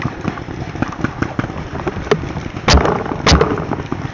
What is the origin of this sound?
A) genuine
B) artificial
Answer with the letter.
A